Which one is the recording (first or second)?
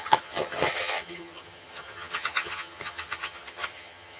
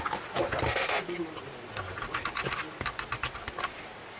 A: second